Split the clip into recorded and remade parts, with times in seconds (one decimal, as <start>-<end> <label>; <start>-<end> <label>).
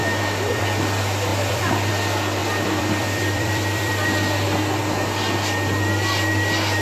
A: 0.0-0.6 remade; 0.6-1.3 recorded; 1.3-1.9 remade; 1.9-2.4 recorded; 2.4-4.8 remade; 4.8-6.8 recorded